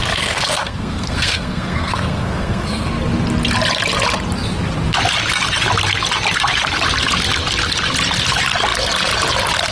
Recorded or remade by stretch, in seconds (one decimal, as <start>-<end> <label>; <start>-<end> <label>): 0.0-2.9 remade; 2.9-9.7 recorded